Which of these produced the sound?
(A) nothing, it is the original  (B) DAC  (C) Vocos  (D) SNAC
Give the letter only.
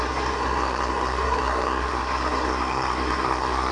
D